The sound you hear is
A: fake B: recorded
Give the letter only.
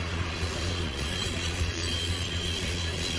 A